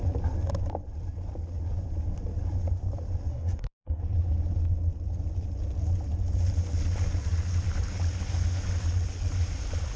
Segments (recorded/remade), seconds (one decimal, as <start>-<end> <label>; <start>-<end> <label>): 0.0-3.3 recorded; 3.3-4.0 remade; 4.0-10.0 recorded